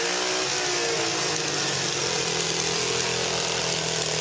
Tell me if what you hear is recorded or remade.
recorded